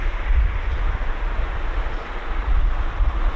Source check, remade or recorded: recorded